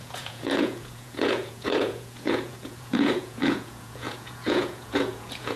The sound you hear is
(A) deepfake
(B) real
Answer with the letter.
A